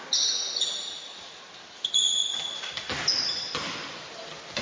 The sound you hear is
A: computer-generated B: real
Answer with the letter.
B